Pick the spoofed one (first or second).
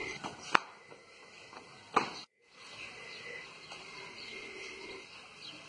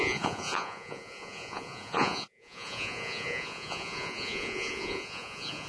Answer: second